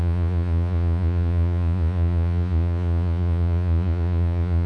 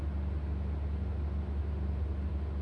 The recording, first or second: second